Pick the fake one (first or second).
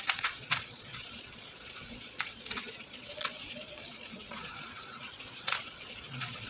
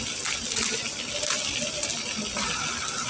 first